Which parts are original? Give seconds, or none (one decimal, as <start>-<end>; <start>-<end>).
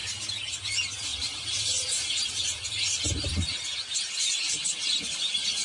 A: 0.0-0.5; 1.1-4.5